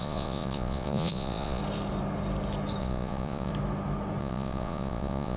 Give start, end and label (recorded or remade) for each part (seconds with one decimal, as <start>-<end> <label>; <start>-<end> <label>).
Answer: 0.0-1.6 remade; 1.6-2.8 recorded; 2.8-3.5 remade; 3.5-4.2 recorded; 4.2-5.4 remade